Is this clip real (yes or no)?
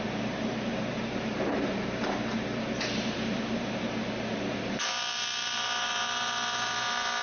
no